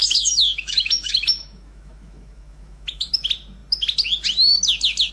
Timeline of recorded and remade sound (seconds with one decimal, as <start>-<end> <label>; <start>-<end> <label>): 0.0-3.1 remade; 3.1-5.1 recorded